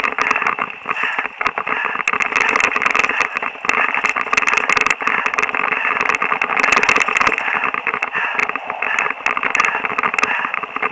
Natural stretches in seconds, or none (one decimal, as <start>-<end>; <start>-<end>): 0.0-10.9